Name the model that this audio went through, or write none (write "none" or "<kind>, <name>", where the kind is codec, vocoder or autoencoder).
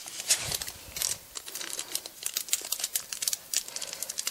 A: vocoder, BigVGAN v2